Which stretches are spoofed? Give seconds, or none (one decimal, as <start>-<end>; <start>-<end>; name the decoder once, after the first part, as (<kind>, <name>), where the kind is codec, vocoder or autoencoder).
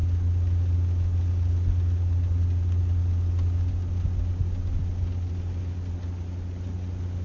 none